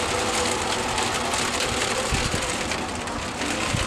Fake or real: real